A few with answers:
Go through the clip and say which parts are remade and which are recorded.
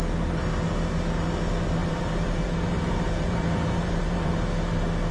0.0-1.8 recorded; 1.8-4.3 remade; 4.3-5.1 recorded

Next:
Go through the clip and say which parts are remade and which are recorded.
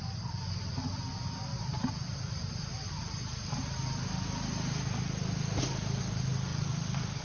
0.0-6.5 recorded; 6.5-7.2 remade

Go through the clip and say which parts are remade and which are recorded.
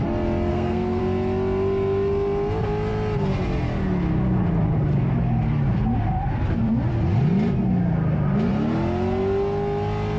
0.0-0.5 recorded; 0.5-1.0 remade; 1.0-10.2 recorded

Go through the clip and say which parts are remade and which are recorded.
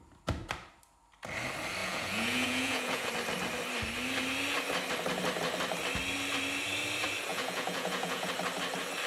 0.0-1.8 recorded; 1.8-3.1 remade; 3.1-7.3 recorded; 7.3-8.3 remade; 8.3-9.1 recorded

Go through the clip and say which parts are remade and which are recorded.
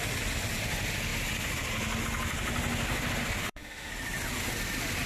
0.0-3.4 recorded; 3.4-3.9 remade; 3.9-5.1 recorded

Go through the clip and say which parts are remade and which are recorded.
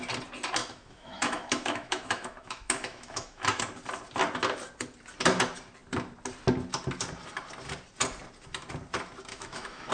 0.0-0.6 recorded; 0.6-3.6 remade; 3.6-9.3 recorded; 9.3-9.9 remade